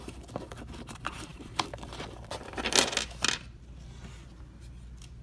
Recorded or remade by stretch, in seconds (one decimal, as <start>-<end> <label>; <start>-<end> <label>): 0.0-1.3 recorded; 1.3-2.6 remade; 2.6-5.2 recorded